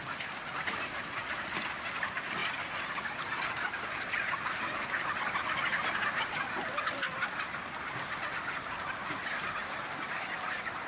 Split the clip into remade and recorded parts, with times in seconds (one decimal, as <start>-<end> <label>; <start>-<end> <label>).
0.0-10.9 recorded